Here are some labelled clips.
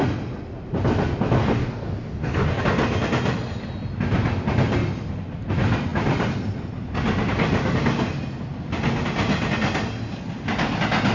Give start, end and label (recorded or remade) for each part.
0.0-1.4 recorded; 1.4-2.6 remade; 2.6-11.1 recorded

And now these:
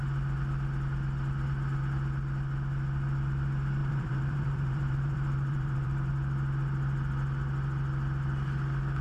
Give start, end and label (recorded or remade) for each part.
0.0-3.8 recorded; 3.8-6.1 remade; 6.1-9.0 recorded